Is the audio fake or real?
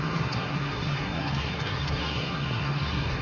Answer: fake